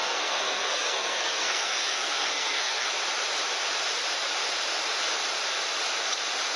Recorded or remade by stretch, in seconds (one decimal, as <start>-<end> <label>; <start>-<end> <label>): 0.0-2.9 remade; 2.9-6.6 recorded